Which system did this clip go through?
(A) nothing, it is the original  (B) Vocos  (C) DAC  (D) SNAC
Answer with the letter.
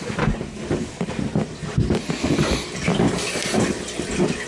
A